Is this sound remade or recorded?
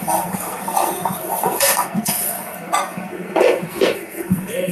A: remade